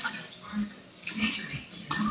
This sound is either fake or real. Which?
real